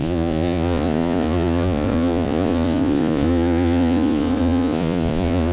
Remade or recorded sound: remade